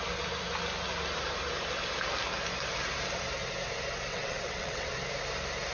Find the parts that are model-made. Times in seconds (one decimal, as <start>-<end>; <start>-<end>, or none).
4.1-4.9